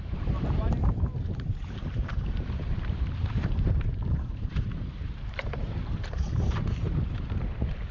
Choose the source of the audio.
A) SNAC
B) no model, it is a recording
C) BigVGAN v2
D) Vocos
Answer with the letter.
C